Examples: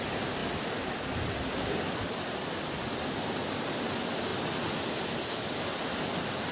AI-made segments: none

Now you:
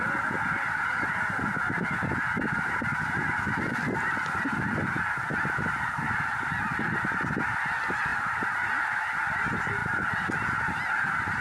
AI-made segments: none

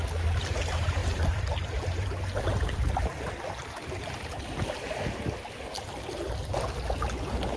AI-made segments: none

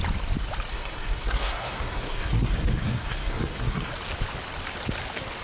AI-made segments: 0.7-3.9 (codec, SNAC)

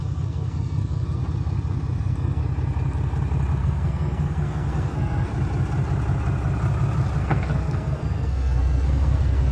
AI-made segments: 0.0-1.2 (codec, SNAC); 2.0-2.4; 3.6-5.3; 7.2-9.5